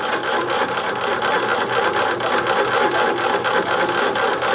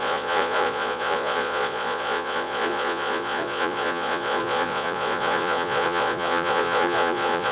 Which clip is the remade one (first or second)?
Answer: second